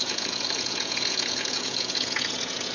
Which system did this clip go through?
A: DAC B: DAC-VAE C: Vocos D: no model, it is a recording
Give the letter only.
C